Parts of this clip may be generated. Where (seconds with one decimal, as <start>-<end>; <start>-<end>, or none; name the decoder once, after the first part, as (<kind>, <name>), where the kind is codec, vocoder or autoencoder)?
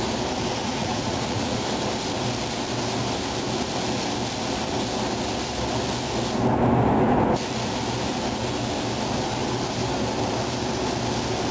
0.6-1.6 (vocoder, Vocos)